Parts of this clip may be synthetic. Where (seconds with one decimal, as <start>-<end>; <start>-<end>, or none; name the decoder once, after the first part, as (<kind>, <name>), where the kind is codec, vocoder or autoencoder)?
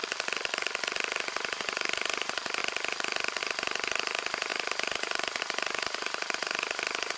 1.3-2.6 (vocoder, BigVGAN v2); 3.4-7.2